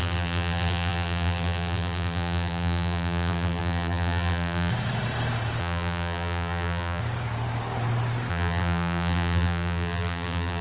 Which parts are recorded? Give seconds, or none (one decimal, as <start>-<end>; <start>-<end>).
4.7-5.6; 7.0-8.3